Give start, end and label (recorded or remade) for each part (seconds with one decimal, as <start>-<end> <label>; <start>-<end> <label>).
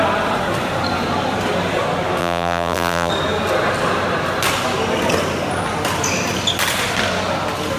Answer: 0.0-2.2 recorded; 2.2-3.1 remade; 3.1-7.8 recorded